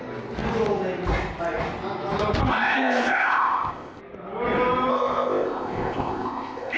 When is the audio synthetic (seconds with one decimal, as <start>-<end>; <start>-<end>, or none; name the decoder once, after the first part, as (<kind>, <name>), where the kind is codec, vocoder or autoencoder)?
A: 2.5-4.0 (codec, ZipCodec); 4.9-6.8

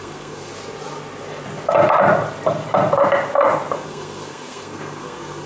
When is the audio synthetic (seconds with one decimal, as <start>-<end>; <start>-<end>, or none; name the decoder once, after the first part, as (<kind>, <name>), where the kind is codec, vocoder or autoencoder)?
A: 0.0-0.5 (codec, SNAC); 3.7-5.5

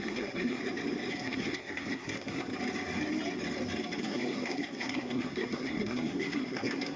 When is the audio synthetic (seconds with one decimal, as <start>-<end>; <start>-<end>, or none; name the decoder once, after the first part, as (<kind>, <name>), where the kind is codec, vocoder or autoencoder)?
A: 0.0-0.6 (codec, SNAC); 1.1-2.5; 4.0-7.0

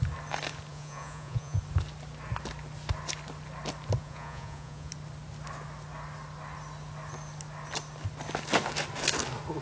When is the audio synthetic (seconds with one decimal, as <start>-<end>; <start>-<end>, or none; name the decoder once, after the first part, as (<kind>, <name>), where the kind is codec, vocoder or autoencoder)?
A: 0.7-1.6 (vocoder, Vocos); 4.0-4.9